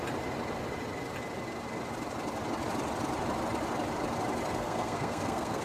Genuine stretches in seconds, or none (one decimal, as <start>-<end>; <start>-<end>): 0.0-4.5